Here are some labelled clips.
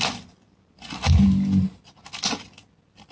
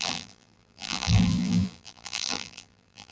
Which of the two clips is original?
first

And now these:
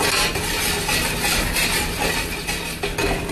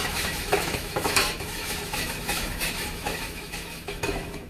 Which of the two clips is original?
first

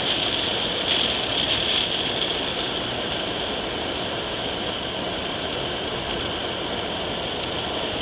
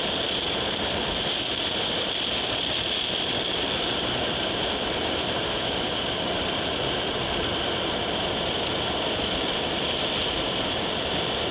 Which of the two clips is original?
first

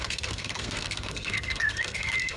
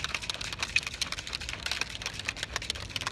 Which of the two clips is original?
second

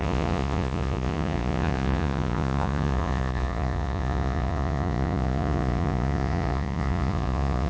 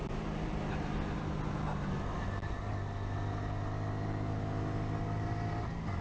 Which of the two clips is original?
second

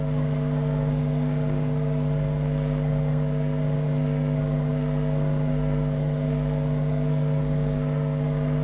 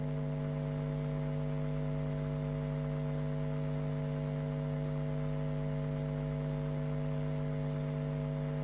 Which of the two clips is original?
second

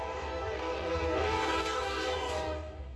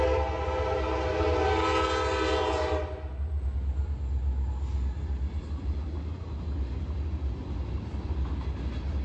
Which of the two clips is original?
second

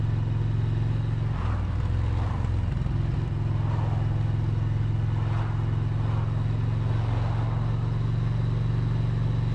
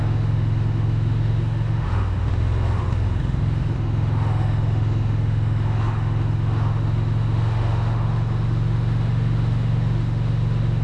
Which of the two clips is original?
first